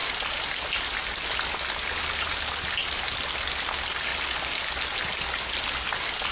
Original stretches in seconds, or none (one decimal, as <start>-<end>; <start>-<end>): 0.0-6.3